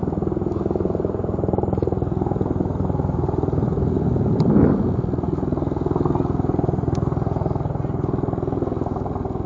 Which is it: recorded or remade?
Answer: recorded